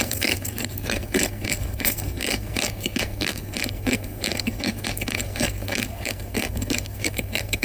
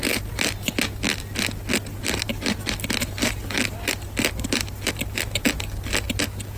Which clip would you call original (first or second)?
second